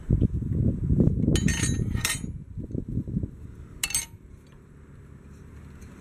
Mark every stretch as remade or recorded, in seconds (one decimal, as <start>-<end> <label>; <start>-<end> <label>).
0.0-6.0 recorded